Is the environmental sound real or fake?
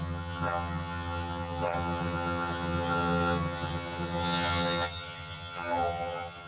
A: fake